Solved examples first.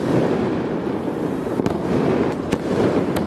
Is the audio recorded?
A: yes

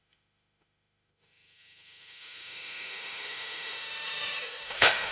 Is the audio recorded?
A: no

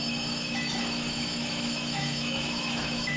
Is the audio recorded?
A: no